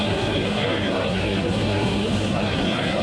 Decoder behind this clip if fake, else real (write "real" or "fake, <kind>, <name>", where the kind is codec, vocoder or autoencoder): fake, codec, SNAC